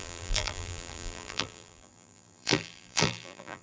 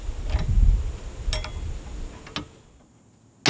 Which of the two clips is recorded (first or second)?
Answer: second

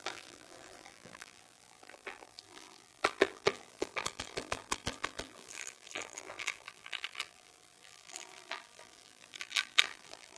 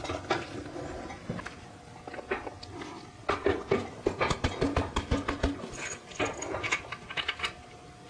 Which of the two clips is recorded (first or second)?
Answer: second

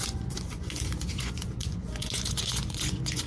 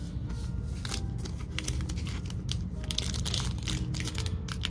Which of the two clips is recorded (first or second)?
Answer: second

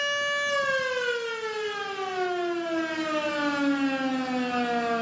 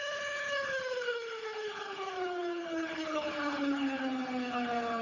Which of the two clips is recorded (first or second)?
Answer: first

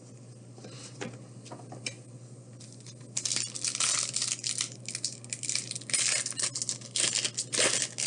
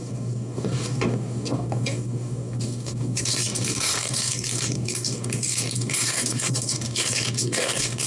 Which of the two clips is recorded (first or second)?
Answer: first